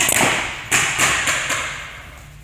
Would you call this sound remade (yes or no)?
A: no